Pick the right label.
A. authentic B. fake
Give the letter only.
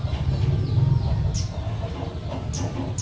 A